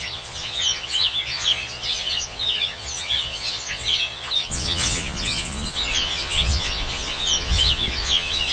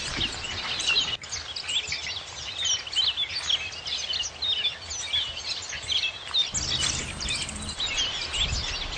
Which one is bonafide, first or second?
second